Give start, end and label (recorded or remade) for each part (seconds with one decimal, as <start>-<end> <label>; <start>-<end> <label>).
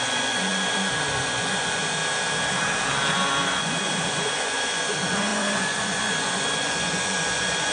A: 0.0-2.0 remade; 2.0-3.1 recorded; 3.1-7.7 remade